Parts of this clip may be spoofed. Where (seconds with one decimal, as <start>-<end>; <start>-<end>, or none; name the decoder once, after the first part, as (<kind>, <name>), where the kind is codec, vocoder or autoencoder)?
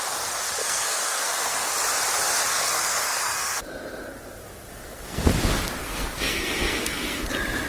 0.6-1.7 (codec, SNAC); 2.5-3.6; 4.7-5.2; 5.8-7.2